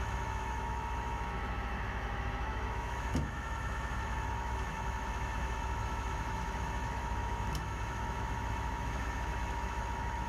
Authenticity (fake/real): fake